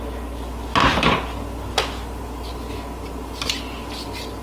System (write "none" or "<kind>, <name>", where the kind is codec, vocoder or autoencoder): none